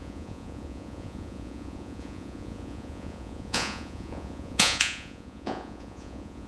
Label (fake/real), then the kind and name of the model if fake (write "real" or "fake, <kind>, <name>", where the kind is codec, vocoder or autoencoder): fake, vocoder, Vocos